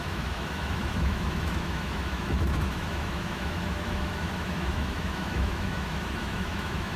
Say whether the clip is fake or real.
fake